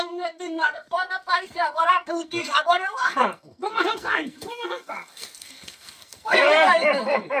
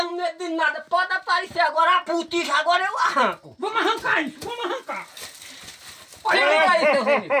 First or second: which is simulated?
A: first